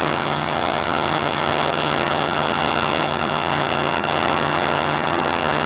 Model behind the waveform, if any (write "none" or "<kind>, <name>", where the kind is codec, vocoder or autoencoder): vocoder, HiFi-GAN